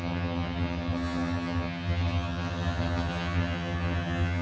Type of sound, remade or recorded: remade